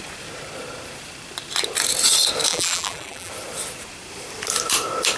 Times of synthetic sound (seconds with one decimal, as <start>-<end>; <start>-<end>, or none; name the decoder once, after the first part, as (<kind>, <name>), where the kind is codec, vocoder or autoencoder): 2.5-3.3 (vocoder, BigVGAN v2)